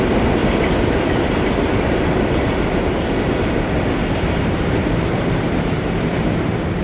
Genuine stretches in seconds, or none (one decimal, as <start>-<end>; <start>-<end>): 0.0-0.4; 1.8-4.8